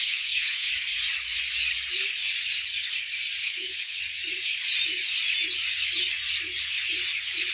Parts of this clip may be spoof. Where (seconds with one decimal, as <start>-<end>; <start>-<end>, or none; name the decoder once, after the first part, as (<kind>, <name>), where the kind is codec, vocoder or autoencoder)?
0.0-0.7 (codec, HILCodec); 3.4-4.0